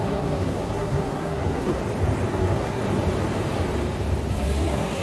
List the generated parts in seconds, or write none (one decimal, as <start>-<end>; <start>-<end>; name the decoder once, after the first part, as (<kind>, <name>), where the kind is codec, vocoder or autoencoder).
0.0-1.8 (codec, SNAC); 2.3-2.8; 4.3-5.0